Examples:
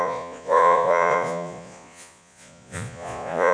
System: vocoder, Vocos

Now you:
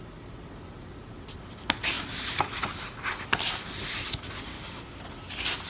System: none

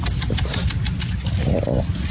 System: none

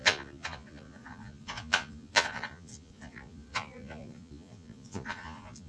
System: vocoder, Vocos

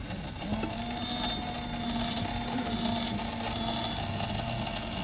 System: none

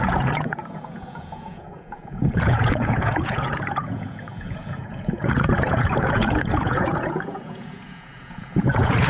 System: vocoder, Vocos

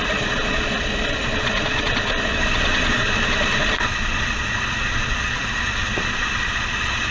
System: vocoder, Vocos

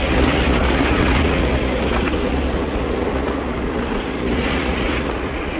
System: vocoder, Vocos